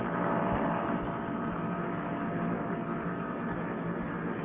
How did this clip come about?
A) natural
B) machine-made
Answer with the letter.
A